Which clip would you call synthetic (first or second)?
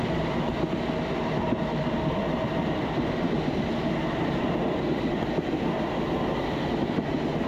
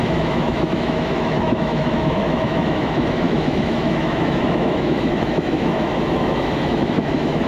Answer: second